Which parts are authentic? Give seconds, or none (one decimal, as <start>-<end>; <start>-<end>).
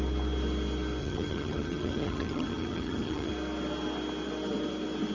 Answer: 0.0-1.0; 3.3-5.1